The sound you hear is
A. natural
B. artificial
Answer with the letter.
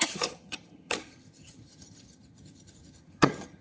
B